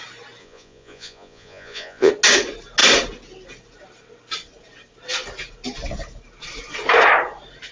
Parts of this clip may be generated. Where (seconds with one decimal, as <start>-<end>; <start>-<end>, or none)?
0.4-2.1